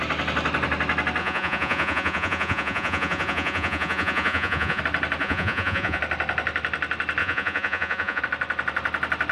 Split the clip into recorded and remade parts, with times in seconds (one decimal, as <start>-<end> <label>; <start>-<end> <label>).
0.0-1.2 recorded; 1.2-4.8 remade; 4.8-5.2 recorded; 5.2-6.0 remade; 6.0-7.2 recorded; 7.2-8.2 remade; 8.2-9.3 recorded